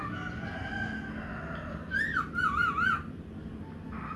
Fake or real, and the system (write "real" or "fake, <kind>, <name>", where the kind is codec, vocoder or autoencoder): real